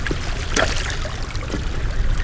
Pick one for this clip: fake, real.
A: real